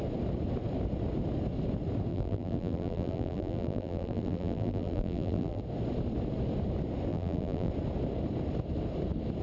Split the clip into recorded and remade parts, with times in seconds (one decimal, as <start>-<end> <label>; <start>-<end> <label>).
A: 0.0-2.1 recorded; 2.1-5.6 remade; 5.6-7.1 recorded; 7.1-7.7 remade; 7.7-9.4 recorded